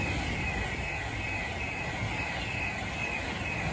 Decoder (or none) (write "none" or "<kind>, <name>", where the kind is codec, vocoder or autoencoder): none